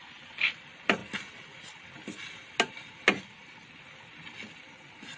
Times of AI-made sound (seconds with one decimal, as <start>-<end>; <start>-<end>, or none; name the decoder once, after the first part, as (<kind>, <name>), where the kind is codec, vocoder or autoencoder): none